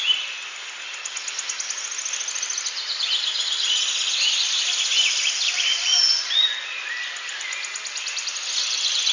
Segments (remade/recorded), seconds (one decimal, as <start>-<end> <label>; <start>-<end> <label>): 0.0-9.1 recorded